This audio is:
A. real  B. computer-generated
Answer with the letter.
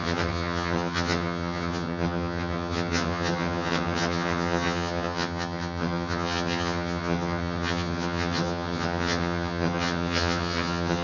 B